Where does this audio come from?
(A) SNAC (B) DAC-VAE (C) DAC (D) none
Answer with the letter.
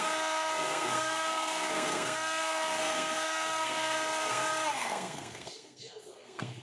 A